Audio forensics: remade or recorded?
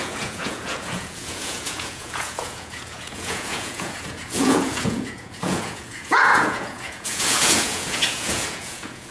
remade